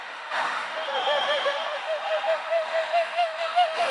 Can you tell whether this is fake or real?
fake